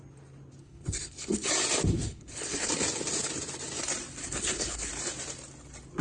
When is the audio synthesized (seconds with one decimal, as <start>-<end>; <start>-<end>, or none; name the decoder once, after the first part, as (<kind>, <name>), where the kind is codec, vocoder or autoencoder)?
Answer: 0.6-1.5 (codec, HILCodec); 1.9-2.7; 4.2-4.9